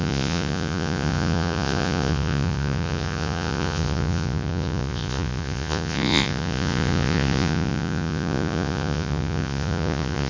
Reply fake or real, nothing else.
fake